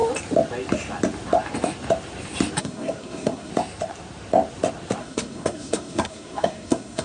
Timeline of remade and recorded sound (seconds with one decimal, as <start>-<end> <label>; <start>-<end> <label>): 0.0-2.6 recorded; 2.6-3.5 remade; 3.5-5.0 recorded; 5.0-7.0 remade